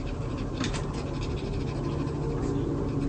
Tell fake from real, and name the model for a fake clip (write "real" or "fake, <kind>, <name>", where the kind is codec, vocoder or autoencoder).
real